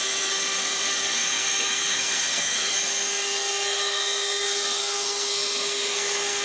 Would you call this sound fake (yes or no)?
yes